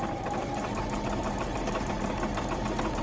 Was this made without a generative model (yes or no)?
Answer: yes